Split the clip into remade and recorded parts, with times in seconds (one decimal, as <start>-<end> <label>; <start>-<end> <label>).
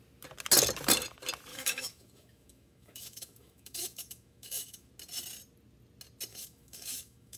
0.0-1.5 recorded; 1.5-4.9 remade; 4.9-6.3 recorded; 6.3-7.4 remade